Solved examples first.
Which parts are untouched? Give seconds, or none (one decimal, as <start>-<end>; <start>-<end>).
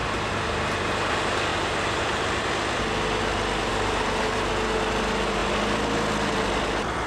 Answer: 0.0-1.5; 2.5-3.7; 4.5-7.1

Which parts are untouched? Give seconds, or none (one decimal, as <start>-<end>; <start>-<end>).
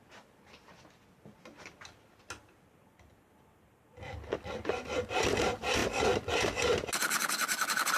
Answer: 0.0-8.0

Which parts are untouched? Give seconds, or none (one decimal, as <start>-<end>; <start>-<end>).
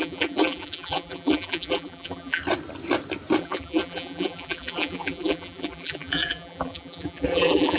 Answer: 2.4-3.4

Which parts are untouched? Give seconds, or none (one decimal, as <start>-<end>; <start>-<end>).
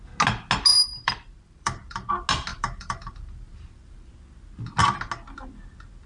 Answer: 0.0-0.7; 2.1-2.5; 4.1-6.1